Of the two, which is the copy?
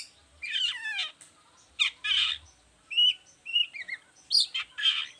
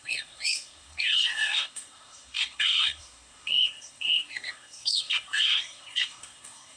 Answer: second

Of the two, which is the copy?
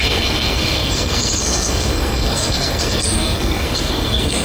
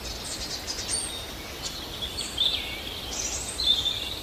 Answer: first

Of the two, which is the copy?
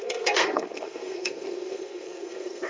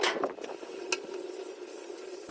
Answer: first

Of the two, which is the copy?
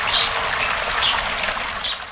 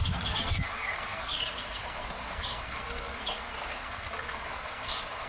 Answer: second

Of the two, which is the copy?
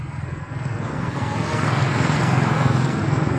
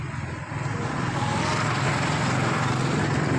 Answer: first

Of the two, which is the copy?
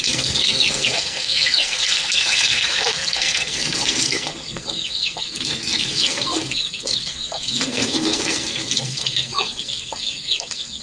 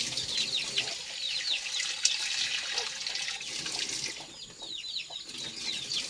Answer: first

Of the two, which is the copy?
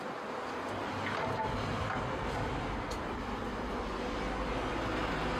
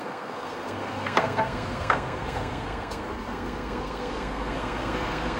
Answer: second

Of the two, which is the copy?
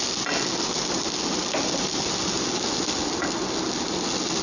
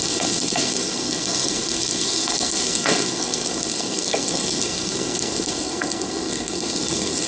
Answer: second